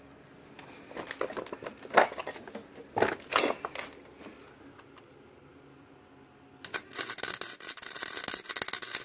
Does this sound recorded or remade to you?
recorded